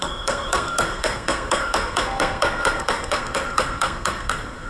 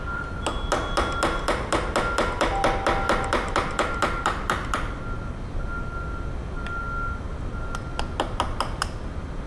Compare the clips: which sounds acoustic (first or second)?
second